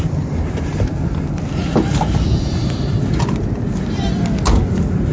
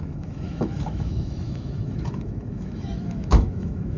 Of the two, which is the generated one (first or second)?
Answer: second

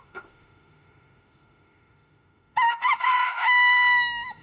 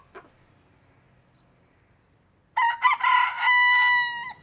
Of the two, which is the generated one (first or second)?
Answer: first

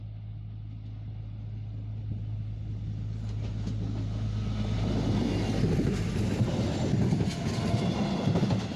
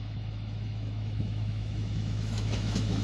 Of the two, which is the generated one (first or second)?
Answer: second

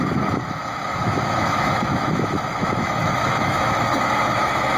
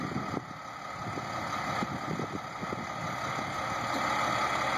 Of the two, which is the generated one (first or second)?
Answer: first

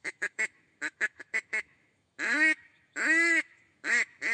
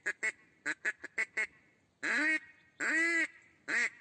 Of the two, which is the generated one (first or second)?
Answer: first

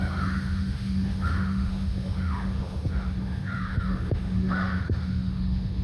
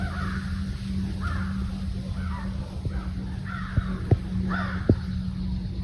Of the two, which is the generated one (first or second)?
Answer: first